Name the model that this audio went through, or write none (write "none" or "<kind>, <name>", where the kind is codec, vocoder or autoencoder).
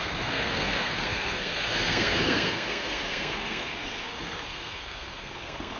codec, SNAC